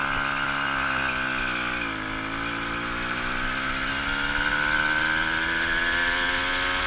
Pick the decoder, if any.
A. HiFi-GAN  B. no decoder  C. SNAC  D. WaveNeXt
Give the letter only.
B